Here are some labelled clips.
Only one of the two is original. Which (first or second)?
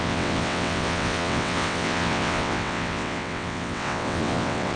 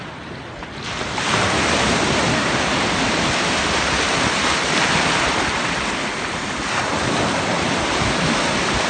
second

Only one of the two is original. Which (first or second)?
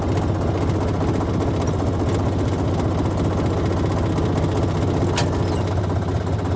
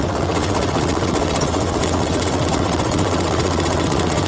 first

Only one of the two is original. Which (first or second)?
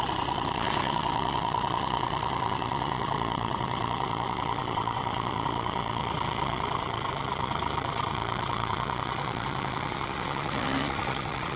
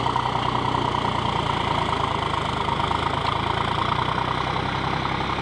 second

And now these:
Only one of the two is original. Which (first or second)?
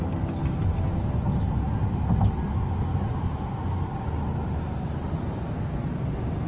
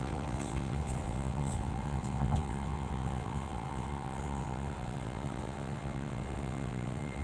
first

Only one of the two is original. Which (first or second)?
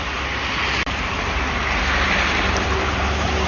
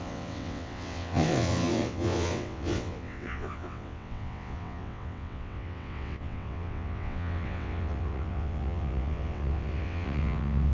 first